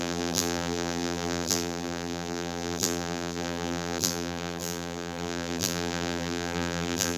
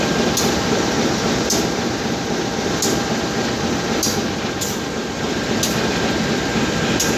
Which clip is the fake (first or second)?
first